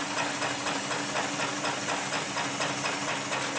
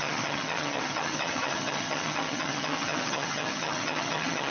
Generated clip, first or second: second